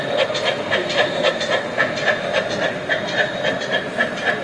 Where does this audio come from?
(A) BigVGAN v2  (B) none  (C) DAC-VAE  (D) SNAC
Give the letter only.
B